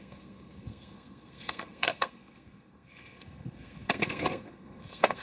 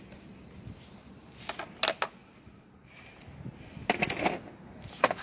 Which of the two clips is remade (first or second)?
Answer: first